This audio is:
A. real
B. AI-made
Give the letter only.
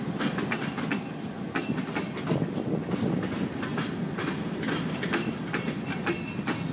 A